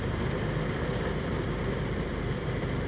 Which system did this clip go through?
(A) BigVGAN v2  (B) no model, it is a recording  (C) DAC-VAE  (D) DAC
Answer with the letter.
A